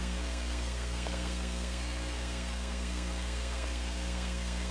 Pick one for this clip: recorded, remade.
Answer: remade